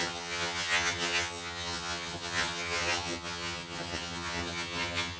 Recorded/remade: remade